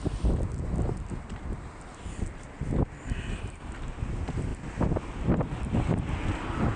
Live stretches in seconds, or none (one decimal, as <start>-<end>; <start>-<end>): 0.0-6.8